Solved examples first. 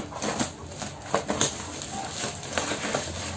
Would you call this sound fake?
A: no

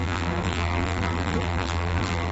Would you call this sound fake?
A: yes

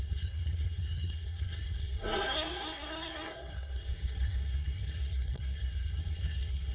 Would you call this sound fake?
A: yes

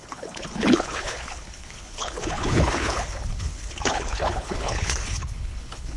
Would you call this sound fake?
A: yes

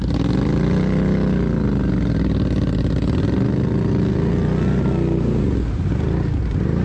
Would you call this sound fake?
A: no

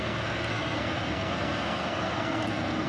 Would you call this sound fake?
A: yes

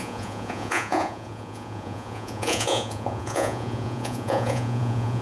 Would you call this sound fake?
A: yes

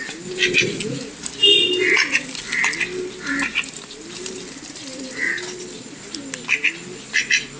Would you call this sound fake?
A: no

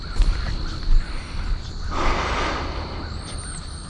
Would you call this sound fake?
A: no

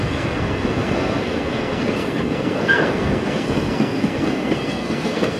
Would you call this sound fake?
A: yes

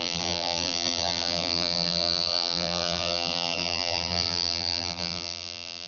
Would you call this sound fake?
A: yes